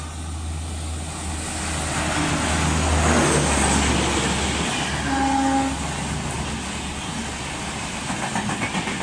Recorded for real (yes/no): yes